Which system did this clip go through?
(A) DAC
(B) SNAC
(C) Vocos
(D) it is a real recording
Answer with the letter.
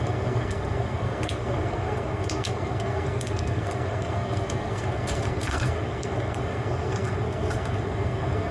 B